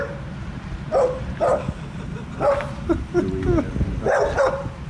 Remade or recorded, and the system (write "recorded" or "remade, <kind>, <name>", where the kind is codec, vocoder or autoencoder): recorded